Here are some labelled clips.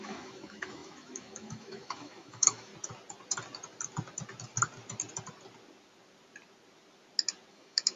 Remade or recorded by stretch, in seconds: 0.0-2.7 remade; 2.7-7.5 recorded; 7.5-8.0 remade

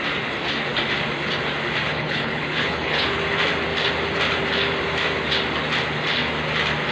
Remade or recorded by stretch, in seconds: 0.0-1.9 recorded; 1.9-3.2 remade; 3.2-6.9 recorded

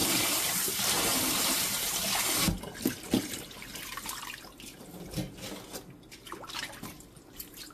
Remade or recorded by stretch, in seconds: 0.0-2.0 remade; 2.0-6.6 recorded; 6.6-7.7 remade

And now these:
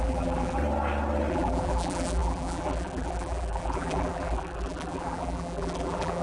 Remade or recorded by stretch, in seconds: 0.0-0.6 remade; 0.6-1.3 recorded; 1.3-6.2 remade

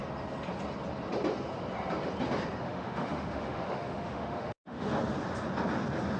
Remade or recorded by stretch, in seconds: 0.0-2.6 recorded; 2.6-4.9 remade; 4.9-6.2 recorded

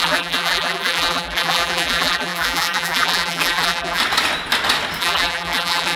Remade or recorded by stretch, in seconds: 0.0-4.0 remade; 4.0-5.0 recorded; 5.0-6.0 remade